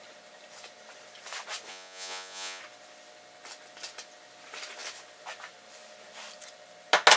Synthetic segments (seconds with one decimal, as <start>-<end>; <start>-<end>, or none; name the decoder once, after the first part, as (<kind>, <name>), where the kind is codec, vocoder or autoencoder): 1.7-2.6 (vocoder, Vocos)